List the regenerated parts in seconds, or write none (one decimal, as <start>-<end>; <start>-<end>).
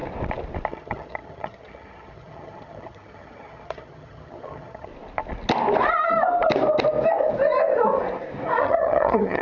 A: 0.7-4.9; 8.6-9.4